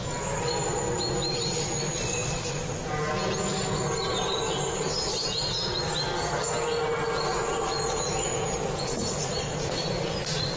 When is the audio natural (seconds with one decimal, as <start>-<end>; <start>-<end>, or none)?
0.0-5.2; 5.8-8.3; 8.9-10.6